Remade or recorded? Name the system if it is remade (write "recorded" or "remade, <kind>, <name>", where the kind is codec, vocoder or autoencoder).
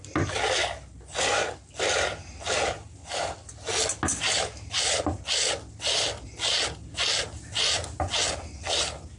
recorded